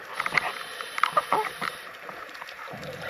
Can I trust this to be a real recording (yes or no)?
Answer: no